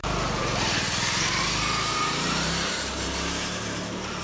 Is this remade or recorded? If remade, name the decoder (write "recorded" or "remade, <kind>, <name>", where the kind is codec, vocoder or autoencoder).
remade, vocoder, BigVGAN v2